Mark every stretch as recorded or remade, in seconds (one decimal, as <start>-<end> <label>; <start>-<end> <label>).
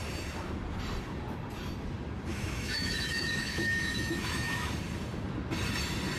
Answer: 0.0-2.3 recorded; 2.3-4.7 remade; 4.7-6.2 recorded